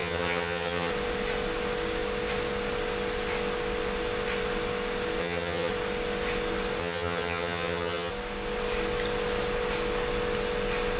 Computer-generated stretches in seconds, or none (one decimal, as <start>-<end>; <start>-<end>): 0.0-0.9; 5.2-5.7; 6.8-8.1